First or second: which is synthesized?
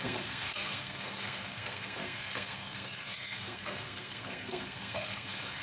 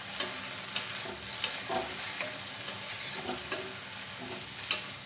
first